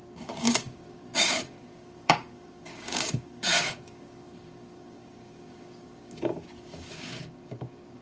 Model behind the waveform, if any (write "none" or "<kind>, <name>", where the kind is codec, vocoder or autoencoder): codec, DAC